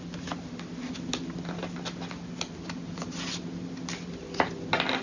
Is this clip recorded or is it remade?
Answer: recorded